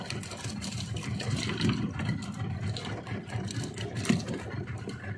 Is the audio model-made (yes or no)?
no